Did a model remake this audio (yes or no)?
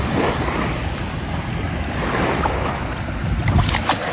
no